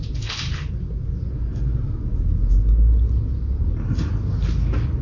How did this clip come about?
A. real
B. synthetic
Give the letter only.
A